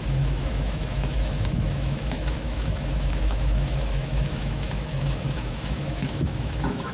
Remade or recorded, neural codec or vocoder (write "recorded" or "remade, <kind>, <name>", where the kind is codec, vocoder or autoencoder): remade, autoencoder, DAC-VAE